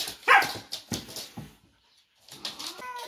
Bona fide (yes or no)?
yes